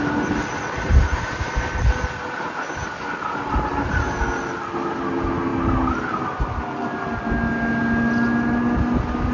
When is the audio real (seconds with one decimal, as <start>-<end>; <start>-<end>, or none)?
0.0-0.9; 1.5-9.3